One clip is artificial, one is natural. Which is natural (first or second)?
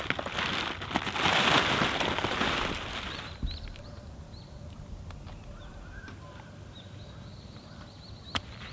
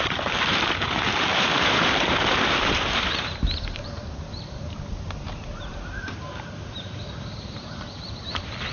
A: first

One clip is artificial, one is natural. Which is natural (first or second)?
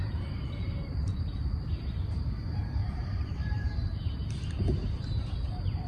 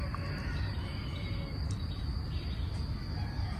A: second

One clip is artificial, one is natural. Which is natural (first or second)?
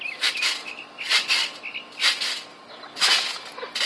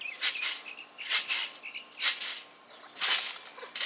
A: first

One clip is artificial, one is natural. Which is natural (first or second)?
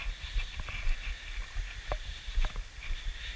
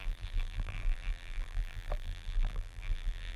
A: first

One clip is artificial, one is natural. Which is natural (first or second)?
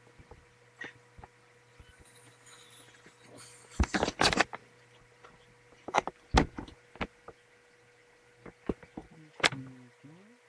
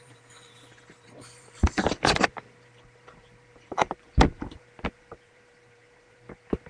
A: first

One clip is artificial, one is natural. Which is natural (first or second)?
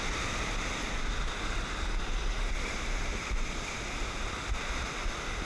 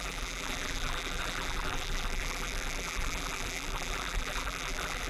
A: first